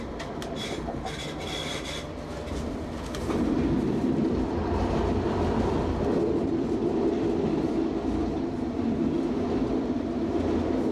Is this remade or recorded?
recorded